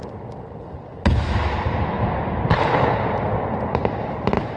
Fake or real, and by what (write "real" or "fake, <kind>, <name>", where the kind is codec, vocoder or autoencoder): real